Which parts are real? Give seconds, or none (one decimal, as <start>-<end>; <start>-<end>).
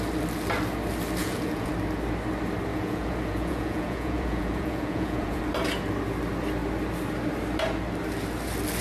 0.0-1.2; 1.7-2.7; 5.4-8.8